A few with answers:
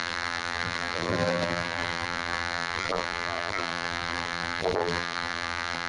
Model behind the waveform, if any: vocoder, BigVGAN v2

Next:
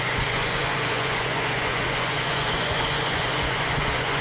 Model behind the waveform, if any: vocoder, Vocos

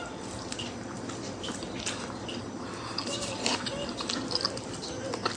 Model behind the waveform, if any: none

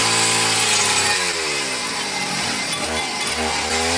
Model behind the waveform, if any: none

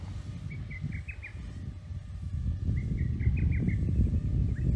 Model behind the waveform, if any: none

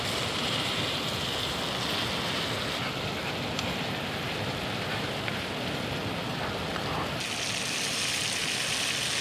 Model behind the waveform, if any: none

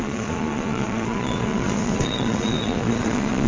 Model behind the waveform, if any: vocoder, Vocos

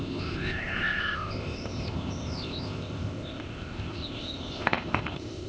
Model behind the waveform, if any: codec, ZipCodec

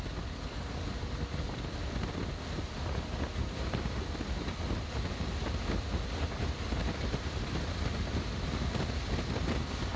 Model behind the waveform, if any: none